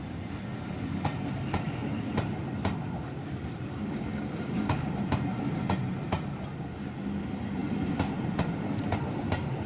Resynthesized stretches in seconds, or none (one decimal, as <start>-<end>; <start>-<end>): 3.7-4.9

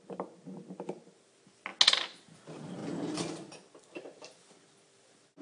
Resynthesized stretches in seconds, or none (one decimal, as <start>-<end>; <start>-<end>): none